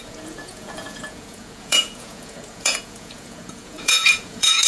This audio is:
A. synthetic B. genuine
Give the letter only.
A